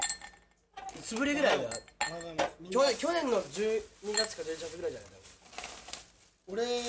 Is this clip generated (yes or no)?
no